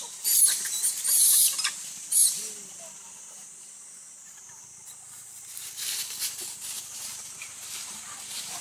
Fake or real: real